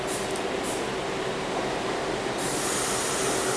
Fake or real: real